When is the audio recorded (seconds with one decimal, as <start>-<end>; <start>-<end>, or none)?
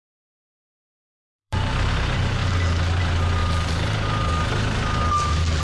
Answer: 1.9-3.4; 4.3-5.6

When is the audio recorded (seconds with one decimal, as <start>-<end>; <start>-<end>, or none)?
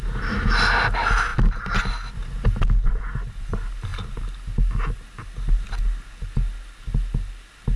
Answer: 0.0-7.8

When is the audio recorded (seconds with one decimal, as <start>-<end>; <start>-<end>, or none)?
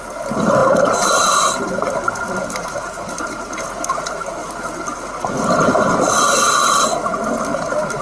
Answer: 0.0-8.0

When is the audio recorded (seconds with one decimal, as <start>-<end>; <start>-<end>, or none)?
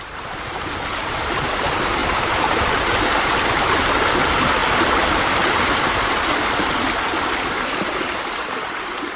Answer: none